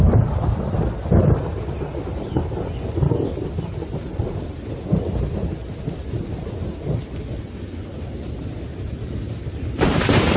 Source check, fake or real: real